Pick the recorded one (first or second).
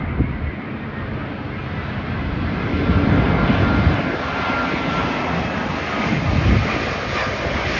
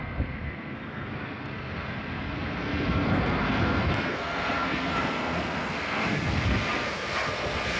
first